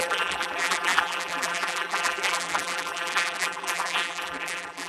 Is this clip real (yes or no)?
no